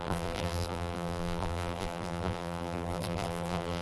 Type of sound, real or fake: fake